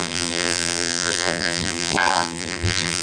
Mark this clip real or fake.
fake